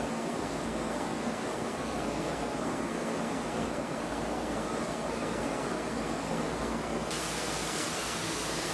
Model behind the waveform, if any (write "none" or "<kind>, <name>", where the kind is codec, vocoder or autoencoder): codec, SNAC